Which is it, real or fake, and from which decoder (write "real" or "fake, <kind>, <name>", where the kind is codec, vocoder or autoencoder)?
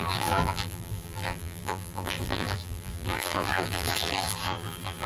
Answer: fake, vocoder, BigVGAN v2